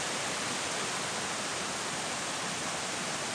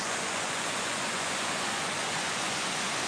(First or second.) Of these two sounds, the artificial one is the second